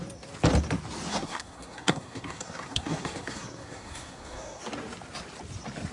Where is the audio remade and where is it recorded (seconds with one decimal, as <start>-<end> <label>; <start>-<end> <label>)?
0.0-1.1 recorded; 1.1-4.6 remade; 4.6-5.9 recorded